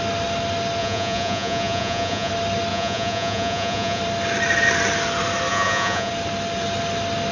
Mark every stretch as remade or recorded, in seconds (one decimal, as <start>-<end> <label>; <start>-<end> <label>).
0.0-0.8 recorded; 0.8-2.3 remade; 2.3-2.7 recorded; 2.7-4.0 remade; 4.0-5.5 recorded; 5.5-6.1 remade; 6.1-7.3 recorded